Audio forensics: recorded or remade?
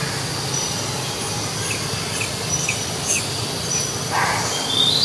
recorded